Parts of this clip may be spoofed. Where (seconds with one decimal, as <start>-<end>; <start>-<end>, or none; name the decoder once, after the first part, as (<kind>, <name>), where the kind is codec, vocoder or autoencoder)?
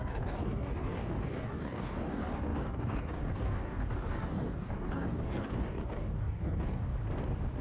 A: 0.0-6.9 (codec, DAC)